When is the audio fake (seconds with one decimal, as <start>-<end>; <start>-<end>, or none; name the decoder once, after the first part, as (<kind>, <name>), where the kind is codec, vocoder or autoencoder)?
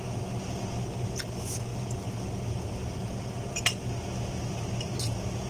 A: none